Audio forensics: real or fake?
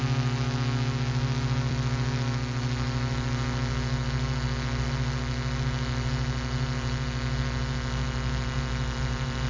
real